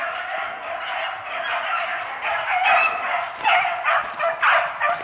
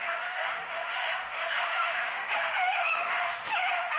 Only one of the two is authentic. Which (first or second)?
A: first